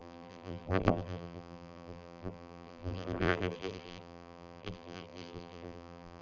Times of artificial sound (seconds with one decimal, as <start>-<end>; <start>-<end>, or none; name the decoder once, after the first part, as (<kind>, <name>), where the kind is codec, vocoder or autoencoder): 0.0-6.2 (vocoder, BigVGAN v2)